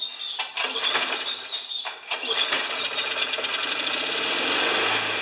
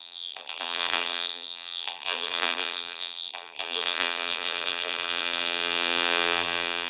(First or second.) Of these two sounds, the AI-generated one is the second